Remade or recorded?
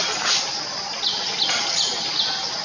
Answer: recorded